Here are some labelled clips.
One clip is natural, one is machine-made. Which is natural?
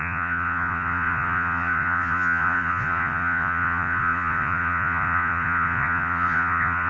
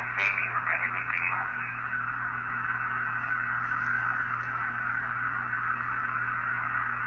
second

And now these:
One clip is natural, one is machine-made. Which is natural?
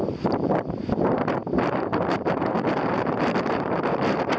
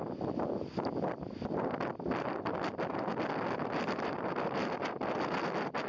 second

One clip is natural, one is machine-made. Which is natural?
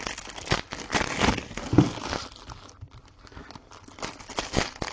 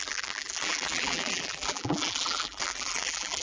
first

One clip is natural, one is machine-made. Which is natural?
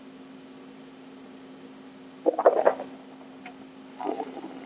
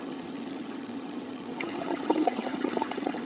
first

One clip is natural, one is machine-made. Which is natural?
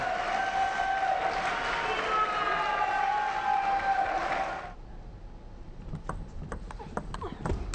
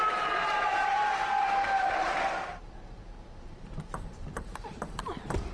first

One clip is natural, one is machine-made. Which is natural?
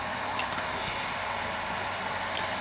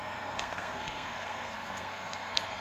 first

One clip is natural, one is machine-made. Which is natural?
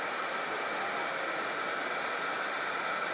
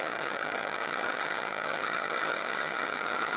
first